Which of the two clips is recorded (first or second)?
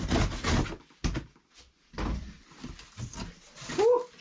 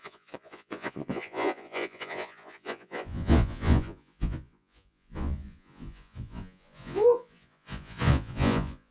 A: first